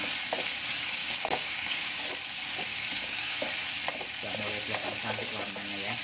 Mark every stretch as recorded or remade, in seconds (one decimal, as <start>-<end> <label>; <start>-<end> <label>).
0.0-1.0 recorded; 1.0-2.0 remade; 2.0-2.7 recorded; 2.7-3.5 remade; 3.5-6.0 recorded